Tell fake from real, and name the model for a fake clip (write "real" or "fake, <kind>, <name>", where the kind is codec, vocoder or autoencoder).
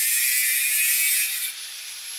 real